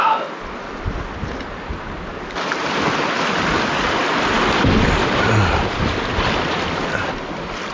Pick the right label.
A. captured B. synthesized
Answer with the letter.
A